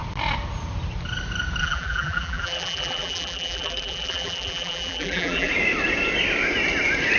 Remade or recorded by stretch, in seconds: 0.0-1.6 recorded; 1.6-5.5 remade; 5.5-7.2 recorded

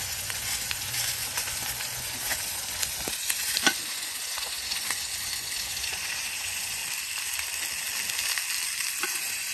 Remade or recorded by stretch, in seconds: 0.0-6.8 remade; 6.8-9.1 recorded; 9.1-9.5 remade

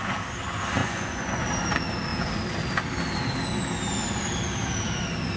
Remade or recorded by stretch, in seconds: 0.0-0.8 recorded; 0.8-1.4 remade; 1.4-5.4 recorded